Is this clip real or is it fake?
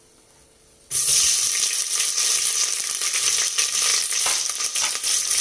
real